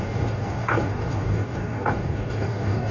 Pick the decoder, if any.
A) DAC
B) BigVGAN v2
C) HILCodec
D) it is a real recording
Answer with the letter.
A